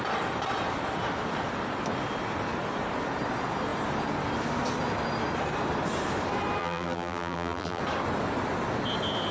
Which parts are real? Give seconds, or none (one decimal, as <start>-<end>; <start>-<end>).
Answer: 0.0-6.6; 7.8-9.3